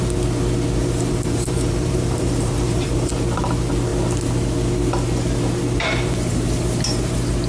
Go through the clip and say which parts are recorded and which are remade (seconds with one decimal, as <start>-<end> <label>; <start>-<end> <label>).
0.0-0.8 recorded; 0.8-3.1 remade; 3.1-7.5 recorded